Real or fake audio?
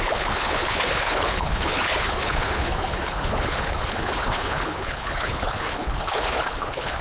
fake